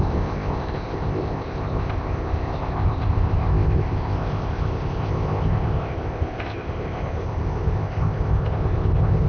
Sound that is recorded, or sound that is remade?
remade